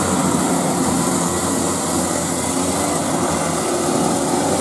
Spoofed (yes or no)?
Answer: no